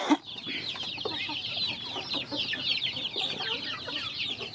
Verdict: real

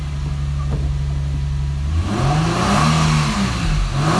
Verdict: real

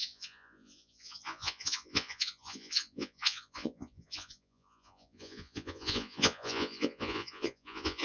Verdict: fake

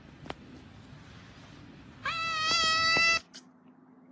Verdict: real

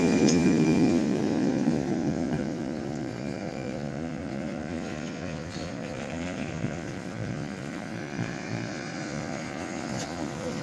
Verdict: fake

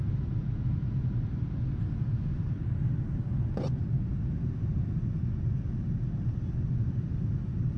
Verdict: real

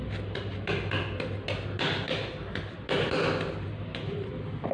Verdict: real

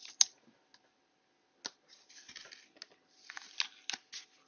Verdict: real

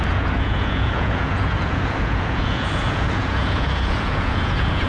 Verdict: fake